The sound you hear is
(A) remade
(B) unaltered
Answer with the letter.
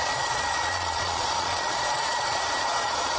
A